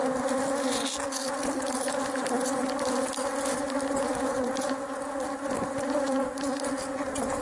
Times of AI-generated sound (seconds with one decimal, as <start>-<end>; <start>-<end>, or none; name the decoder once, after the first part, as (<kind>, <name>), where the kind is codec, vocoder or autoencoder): none